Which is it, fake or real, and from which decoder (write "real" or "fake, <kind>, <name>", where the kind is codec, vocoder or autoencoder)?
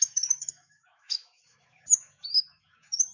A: fake, autoencoder, DAC-VAE